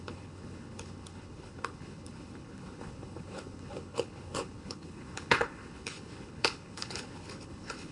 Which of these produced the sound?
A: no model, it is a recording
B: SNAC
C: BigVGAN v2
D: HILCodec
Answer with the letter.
D